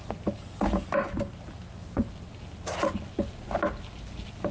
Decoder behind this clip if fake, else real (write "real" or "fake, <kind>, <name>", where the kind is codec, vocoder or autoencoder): real